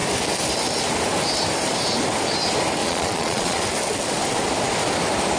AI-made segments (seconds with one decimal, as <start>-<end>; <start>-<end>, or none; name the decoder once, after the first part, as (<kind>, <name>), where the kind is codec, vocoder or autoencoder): 2.8-3.6 (vocoder, Vocos)